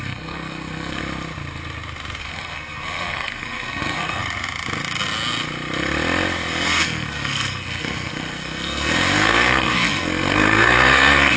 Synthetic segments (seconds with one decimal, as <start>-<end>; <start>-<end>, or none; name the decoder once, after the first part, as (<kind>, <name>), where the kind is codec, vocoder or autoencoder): 0.0-1.0 (codec, SNAC); 2.2-4.2; 6.8-11.4